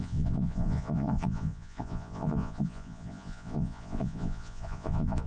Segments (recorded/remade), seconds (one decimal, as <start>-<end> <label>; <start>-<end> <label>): 0.0-5.3 remade